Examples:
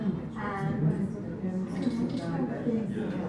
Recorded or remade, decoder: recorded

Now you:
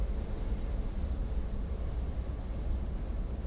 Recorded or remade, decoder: recorded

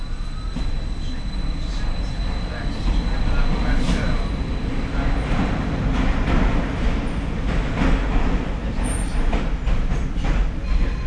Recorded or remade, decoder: recorded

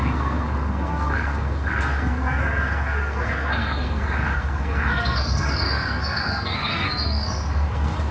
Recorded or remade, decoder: remade, codec, SNAC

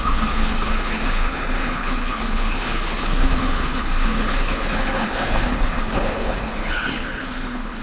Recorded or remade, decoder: remade, codec, HILCodec